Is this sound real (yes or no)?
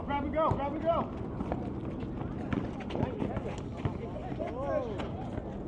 yes